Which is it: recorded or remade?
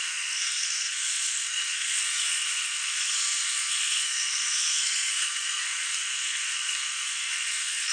remade